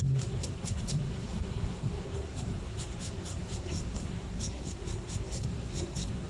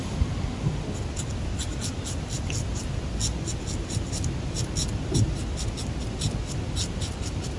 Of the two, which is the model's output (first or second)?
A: first